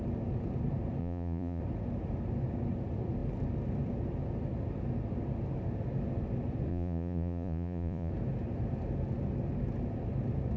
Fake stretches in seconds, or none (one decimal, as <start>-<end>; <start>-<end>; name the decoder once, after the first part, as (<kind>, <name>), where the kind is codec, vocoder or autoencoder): 1.0-1.6 (vocoder, Vocos); 6.7-8.1